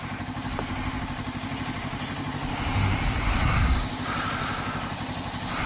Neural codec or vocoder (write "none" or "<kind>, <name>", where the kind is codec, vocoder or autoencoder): none